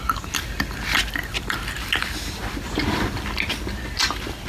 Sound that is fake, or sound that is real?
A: real